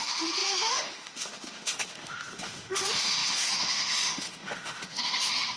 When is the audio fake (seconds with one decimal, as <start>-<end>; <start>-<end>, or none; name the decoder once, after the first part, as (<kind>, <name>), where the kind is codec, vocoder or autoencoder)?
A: 0.0-5.6 (autoencoder, DAC-VAE)